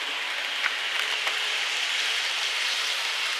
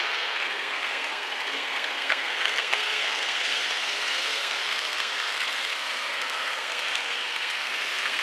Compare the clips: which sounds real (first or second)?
first